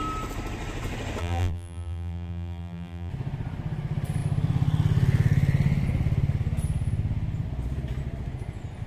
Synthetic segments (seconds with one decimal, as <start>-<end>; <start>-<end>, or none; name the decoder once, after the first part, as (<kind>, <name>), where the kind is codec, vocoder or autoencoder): 1.2-3.1 (vocoder, BigVGAN v2)